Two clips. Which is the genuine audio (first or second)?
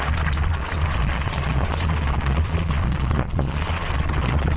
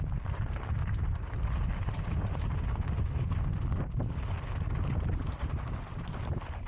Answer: second